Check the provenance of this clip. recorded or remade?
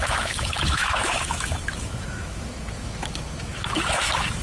remade